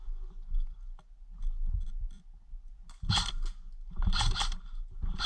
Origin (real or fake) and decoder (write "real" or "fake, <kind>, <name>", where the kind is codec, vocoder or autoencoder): real